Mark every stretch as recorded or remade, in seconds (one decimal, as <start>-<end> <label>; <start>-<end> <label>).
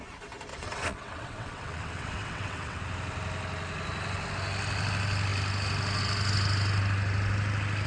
0.0-0.5 recorded; 0.5-2.8 remade; 2.8-7.9 recorded